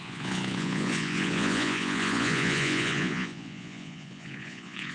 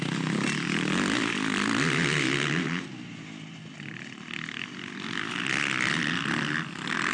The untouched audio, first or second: second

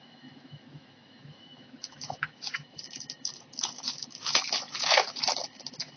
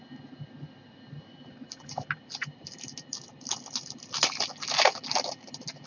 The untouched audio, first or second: second